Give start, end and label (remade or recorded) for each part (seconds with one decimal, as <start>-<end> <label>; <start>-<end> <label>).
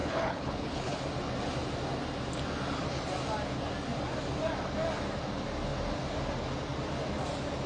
0.0-1.0 remade; 1.0-7.7 recorded